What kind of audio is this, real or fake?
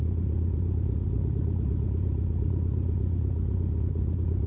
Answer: fake